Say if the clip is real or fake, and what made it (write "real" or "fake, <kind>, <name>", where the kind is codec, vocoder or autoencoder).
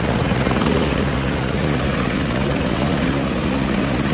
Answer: fake, vocoder, Vocos